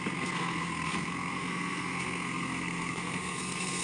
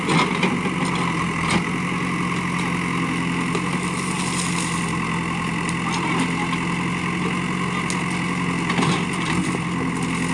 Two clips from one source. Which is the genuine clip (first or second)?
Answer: second